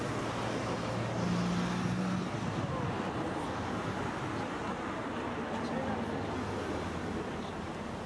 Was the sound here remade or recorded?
recorded